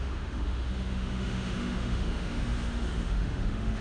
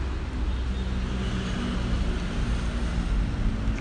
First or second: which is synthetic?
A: first